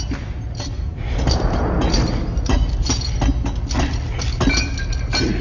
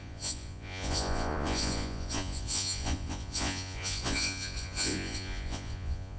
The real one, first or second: first